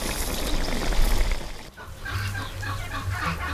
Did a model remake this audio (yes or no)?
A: no